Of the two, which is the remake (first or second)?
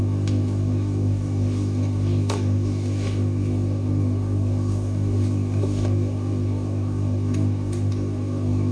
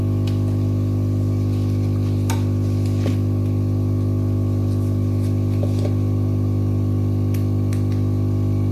first